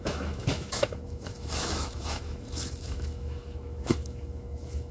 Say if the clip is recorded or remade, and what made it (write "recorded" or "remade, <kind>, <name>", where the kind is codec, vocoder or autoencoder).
remade, autoencoder, DAC-VAE